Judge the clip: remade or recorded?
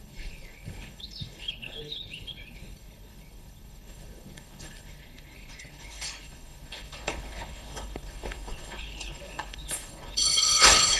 remade